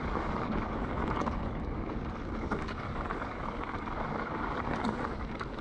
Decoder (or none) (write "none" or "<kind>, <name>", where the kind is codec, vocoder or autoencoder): codec, DAC